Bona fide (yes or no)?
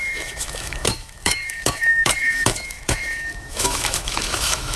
no